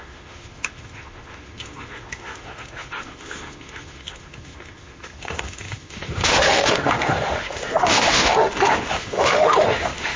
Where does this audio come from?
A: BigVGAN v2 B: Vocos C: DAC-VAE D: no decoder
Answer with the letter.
C